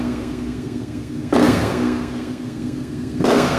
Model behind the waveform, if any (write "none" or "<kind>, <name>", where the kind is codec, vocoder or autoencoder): codec, SNAC